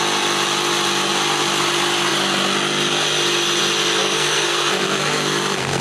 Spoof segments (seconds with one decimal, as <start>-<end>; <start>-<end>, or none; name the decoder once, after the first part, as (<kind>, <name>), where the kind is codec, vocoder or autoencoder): 4.0-5.8 (codec, SNAC)